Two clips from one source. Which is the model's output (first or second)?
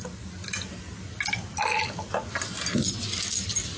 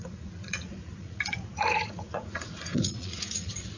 second